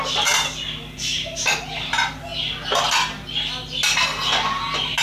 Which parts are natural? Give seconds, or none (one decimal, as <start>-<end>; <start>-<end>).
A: 0.0-5.0